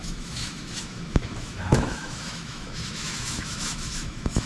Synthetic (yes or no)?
yes